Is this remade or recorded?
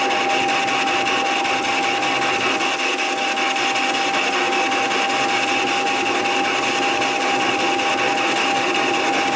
recorded